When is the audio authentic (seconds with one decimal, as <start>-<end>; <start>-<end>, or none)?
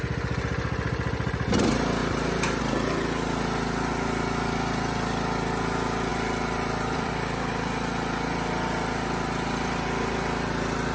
0.0-2.0; 2.6-6.1; 7.1-10.9